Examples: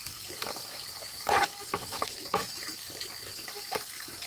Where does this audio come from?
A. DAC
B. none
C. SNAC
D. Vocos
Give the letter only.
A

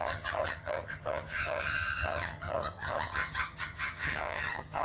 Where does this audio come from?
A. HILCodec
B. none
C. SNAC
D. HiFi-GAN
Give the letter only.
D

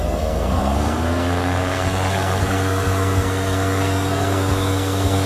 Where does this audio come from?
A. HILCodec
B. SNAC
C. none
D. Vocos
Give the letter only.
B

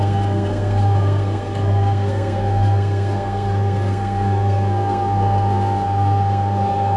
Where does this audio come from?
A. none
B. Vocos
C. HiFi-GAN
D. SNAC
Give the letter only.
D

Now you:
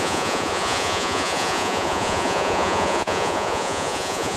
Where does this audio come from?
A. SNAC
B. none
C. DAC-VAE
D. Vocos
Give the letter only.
D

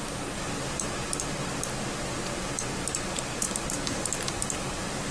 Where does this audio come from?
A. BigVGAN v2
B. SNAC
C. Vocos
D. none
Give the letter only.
D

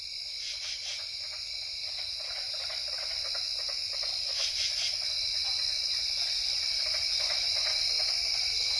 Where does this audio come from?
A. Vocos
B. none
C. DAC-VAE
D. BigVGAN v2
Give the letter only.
B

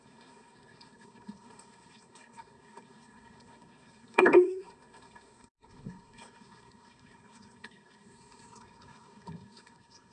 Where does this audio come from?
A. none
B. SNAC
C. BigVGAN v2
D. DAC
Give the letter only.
B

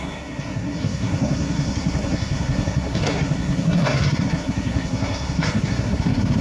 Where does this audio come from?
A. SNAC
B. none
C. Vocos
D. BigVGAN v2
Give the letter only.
A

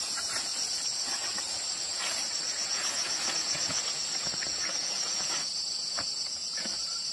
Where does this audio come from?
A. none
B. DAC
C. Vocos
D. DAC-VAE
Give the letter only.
C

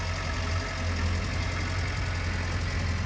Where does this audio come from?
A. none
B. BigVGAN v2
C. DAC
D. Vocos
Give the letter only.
A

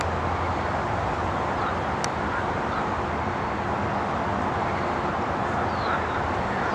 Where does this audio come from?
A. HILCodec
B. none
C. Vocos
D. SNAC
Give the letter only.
B